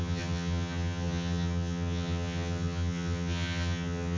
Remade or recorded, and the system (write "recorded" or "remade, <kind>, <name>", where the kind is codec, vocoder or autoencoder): remade, vocoder, HiFi-GAN